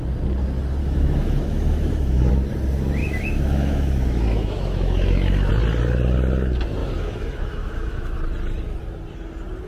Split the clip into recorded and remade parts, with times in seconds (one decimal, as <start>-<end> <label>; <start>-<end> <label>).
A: 0.0-0.8 recorded; 0.8-2.3 remade; 2.3-3.0 recorded; 3.0-5.5 remade; 5.5-6.8 recorded; 6.8-8.2 remade; 8.2-9.7 recorded